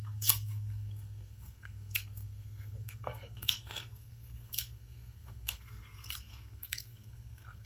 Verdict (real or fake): fake